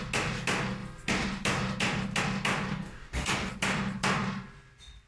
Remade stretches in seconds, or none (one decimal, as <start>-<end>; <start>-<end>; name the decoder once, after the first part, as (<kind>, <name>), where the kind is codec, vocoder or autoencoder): 2.7-3.5 (codec, DAC)